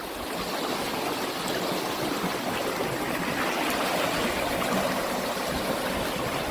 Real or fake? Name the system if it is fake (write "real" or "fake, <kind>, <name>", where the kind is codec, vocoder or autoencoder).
real